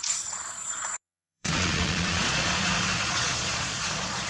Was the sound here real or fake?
fake